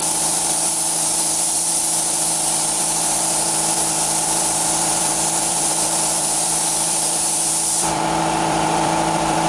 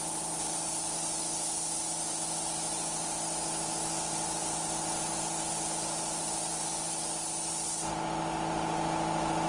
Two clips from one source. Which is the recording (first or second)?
second